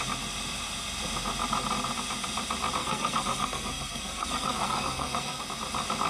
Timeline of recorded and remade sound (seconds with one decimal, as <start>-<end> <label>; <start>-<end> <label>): 0.0-2.8 recorded; 2.8-5.4 remade; 5.4-6.1 recorded